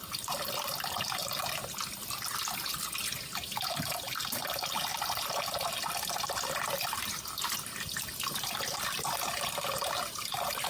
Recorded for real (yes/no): yes